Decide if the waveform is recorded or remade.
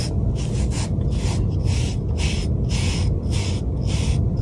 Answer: recorded